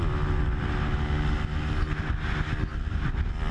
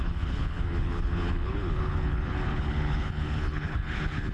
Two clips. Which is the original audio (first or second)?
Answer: first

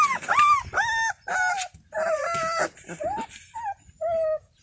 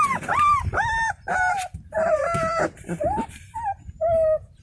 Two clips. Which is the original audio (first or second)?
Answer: first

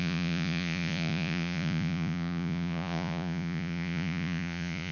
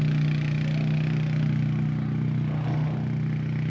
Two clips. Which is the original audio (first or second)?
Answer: second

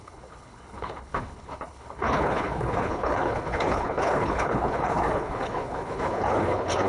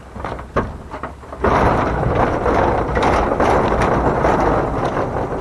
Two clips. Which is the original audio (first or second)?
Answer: second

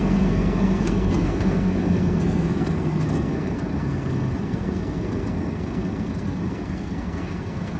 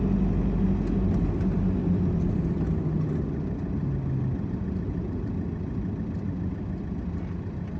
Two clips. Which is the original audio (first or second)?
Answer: second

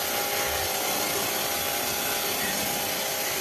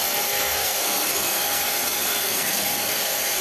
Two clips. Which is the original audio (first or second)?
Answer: first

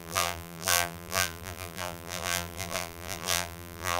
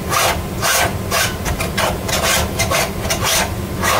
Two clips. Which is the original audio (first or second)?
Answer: second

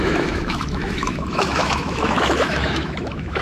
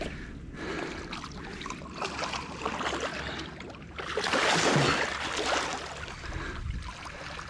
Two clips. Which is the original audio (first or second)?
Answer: second